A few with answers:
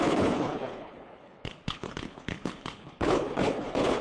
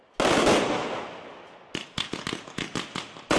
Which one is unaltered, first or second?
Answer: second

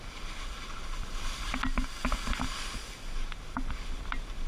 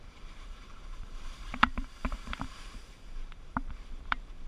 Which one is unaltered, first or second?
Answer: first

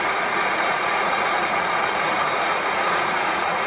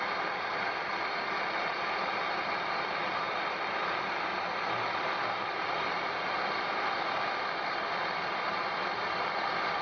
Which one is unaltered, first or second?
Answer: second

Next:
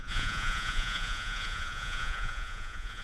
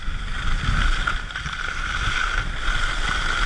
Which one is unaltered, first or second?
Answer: second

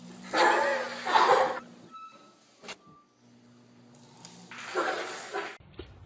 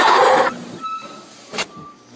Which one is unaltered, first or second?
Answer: first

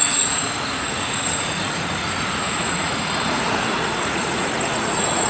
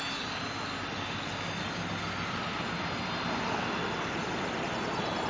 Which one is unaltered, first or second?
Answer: second